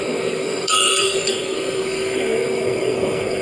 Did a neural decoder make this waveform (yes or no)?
yes